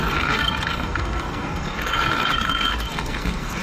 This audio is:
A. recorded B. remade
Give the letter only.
B